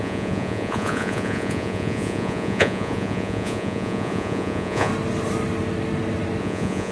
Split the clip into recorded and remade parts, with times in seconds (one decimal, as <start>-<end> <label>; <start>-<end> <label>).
0.0-4.9 remade; 4.9-6.4 recorded; 6.4-6.9 remade